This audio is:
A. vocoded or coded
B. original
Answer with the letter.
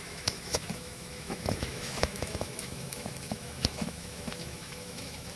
A